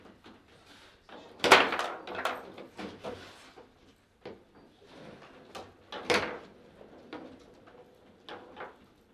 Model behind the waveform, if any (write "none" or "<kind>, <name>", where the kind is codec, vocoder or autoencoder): none